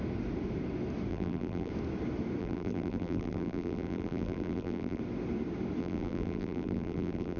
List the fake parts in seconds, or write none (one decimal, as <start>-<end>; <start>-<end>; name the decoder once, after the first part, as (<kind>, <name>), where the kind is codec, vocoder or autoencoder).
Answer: 1.1-1.7 (vocoder, BigVGAN v2); 2.4-5.0; 5.8-7.4

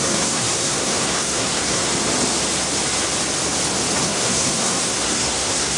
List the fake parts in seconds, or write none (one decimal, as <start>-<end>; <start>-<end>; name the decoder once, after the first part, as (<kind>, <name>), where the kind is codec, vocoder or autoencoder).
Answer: 0.0-1.9 (codec, SNAC); 4.0-5.8

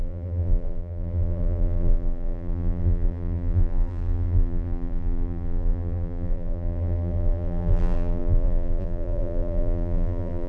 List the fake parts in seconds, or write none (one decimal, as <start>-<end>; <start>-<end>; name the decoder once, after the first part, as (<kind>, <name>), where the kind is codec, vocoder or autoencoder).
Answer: 0.0-10.5 (vocoder, BigVGAN v2)

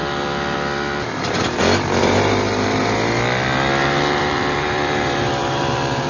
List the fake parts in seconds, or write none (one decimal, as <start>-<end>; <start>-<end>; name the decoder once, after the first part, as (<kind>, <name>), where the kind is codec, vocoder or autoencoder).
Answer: 2.0-3.2 (vocoder, BigVGAN v2); 3.8-6.1

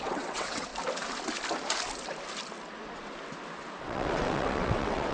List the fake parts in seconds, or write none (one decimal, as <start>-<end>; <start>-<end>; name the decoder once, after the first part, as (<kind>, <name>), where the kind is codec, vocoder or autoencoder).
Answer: 0.0-0.7 (vocoder, WaveNeXt); 3.8-5.1

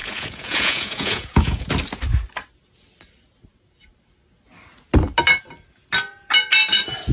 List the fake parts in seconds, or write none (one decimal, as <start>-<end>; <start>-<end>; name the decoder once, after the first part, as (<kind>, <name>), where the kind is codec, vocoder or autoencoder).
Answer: 0.0-1.7 (vocoder, Vocos)

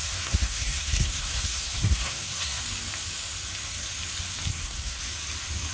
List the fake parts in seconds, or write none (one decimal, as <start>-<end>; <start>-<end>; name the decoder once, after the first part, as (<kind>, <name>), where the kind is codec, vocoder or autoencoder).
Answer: 0.0-2.6 (codec, SNAC); 4.5-5.0

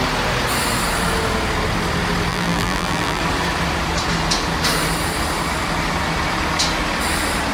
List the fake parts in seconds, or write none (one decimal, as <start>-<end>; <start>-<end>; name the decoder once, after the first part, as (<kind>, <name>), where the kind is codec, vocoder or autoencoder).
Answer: 2.3-3.2 (vocoder, BigVGAN v2)